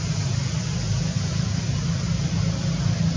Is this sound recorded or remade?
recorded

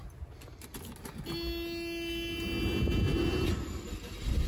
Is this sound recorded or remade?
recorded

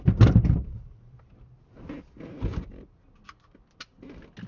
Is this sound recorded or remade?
recorded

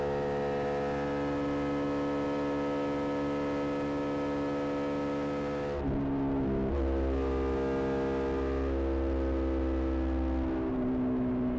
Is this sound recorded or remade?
recorded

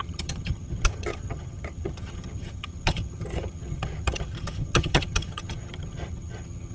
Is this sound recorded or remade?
remade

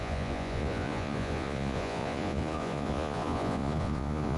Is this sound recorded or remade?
remade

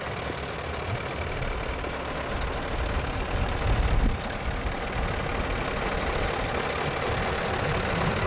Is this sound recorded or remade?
recorded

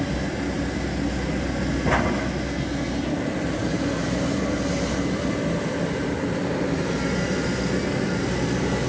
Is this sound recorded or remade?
recorded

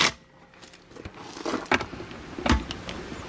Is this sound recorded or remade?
recorded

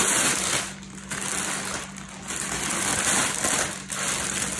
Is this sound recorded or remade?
recorded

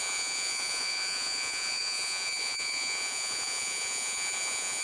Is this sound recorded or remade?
remade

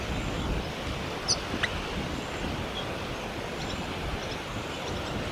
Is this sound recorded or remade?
recorded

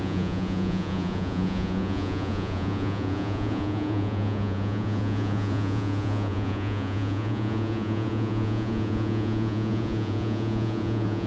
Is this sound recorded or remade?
remade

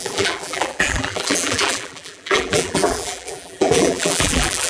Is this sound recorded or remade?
remade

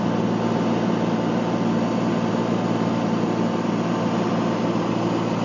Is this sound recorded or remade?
recorded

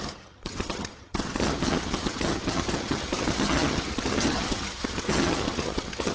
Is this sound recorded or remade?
remade